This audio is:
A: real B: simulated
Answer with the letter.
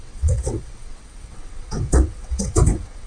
B